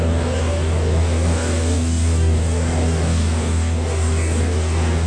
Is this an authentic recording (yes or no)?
no